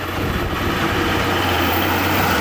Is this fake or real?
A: fake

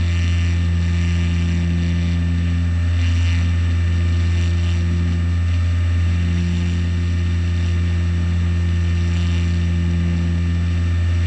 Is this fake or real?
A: real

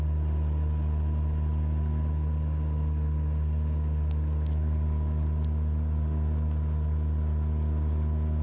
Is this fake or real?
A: real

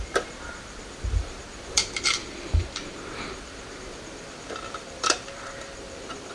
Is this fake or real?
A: fake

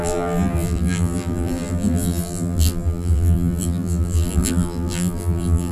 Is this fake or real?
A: fake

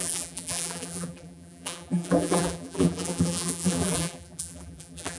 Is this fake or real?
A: fake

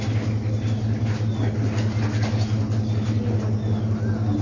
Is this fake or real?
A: real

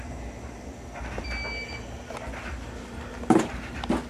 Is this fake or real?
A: real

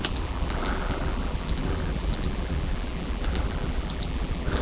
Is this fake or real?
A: fake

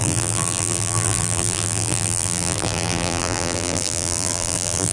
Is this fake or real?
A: fake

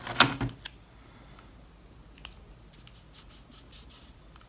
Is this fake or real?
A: real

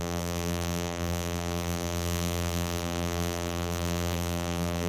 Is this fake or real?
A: fake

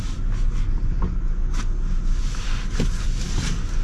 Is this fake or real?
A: real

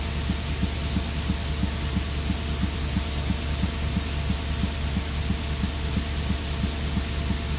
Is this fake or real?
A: real